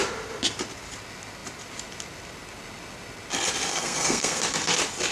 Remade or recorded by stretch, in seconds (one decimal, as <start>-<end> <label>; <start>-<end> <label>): 0.0-3.7 recorded; 3.7-4.4 remade; 4.4-5.1 recorded